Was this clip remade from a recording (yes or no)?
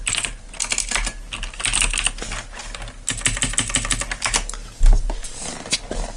no